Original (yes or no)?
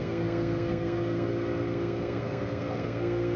no